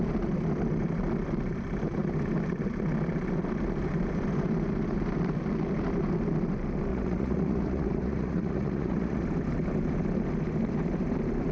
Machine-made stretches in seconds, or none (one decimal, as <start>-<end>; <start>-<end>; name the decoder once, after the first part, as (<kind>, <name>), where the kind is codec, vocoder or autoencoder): 6.9-9.2 (vocoder, Vocos)